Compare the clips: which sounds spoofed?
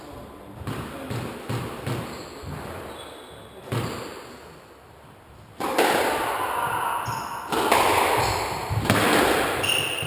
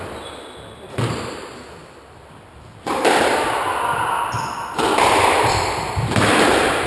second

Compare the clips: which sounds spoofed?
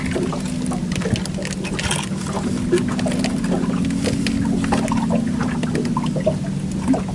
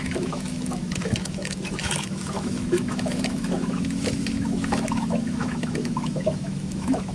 second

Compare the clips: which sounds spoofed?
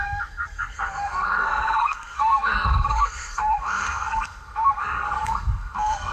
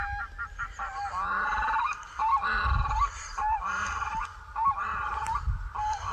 first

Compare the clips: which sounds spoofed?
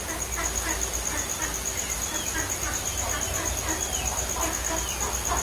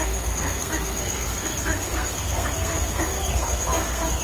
second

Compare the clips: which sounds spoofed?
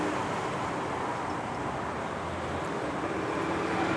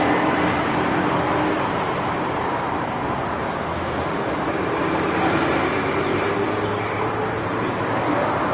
second